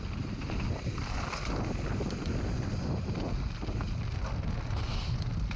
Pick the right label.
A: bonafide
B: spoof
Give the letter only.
A